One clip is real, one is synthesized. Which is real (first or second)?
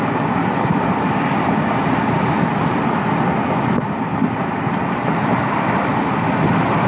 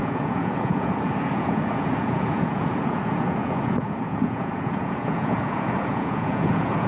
first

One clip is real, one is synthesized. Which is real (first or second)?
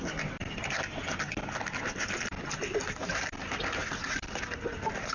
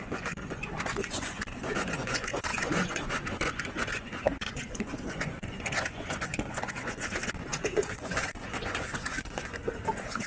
first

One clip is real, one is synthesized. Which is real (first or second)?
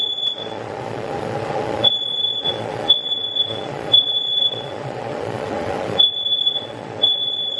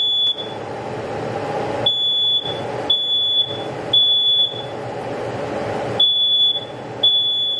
second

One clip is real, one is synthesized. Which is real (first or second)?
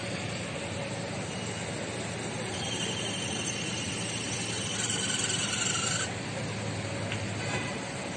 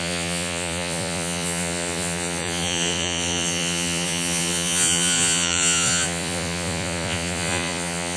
first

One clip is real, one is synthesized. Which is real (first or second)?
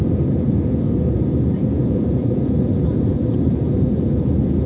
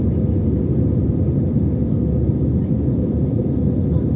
second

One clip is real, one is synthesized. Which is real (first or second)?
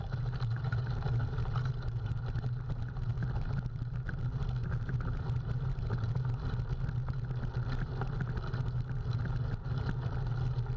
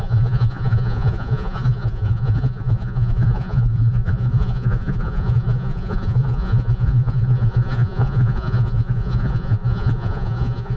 first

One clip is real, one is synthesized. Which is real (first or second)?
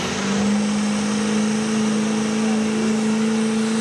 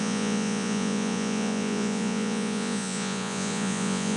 first